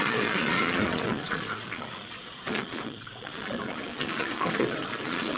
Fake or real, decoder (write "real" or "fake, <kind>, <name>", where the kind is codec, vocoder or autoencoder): fake, vocoder, Vocos